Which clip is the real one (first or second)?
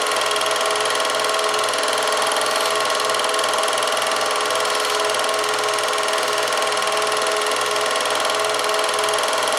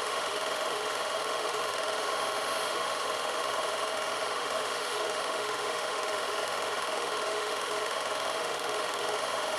first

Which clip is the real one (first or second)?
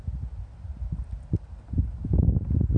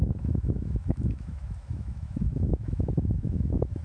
first